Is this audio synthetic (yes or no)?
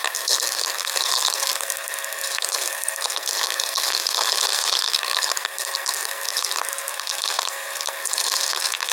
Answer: yes